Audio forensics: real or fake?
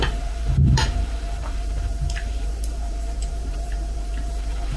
fake